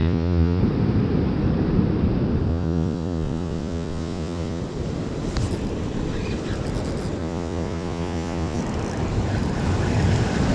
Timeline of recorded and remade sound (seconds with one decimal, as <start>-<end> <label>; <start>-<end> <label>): 0.0-0.6 remade; 0.6-2.5 recorded; 2.5-4.6 remade; 4.6-7.2 recorded; 7.2-8.6 remade; 8.6-10.5 recorded